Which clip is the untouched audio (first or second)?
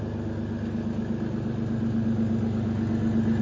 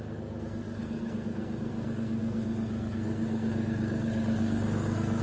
first